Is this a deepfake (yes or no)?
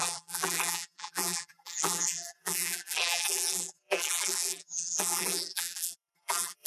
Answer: yes